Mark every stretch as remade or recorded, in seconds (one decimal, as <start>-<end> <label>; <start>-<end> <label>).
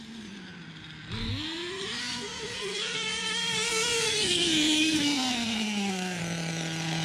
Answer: 0.0-2.0 recorded; 2.0-6.2 remade; 6.2-7.0 recorded